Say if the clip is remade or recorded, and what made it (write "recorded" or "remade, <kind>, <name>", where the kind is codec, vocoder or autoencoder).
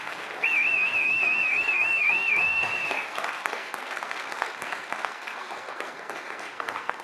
remade, codec, SNAC